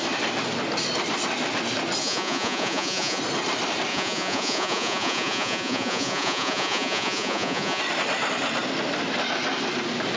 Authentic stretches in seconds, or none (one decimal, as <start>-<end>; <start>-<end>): 0.0-2.0; 3.2-3.9; 7.8-10.2